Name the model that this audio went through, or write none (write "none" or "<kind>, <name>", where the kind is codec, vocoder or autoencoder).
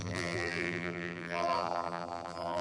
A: vocoder, BigVGAN v2